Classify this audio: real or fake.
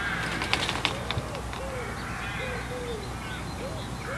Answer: real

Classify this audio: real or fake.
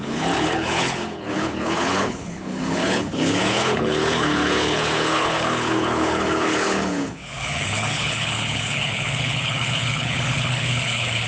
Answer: fake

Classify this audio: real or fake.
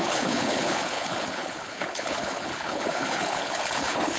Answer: fake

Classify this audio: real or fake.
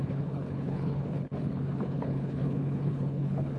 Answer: fake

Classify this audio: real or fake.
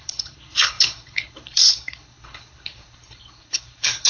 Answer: fake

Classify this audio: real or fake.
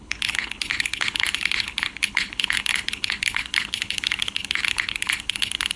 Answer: fake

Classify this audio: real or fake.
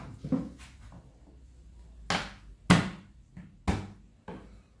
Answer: real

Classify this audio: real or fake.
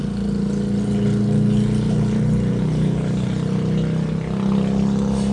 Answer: real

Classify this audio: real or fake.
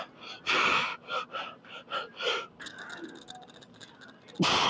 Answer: real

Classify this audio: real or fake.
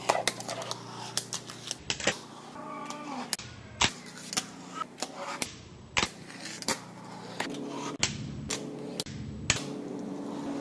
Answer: real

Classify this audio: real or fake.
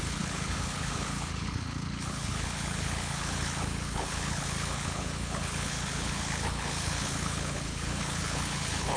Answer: fake